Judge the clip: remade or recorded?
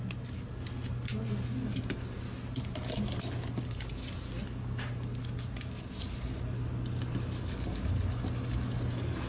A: recorded